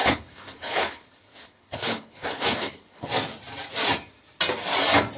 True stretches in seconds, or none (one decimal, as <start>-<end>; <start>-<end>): 3.1-5.2